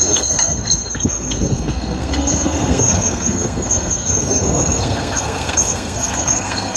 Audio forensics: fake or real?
fake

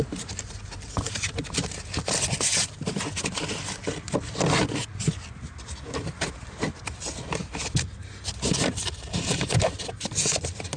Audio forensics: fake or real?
real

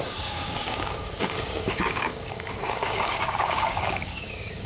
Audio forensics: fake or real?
fake